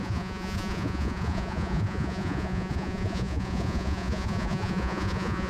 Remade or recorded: remade